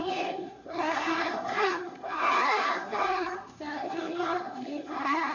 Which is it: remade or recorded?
remade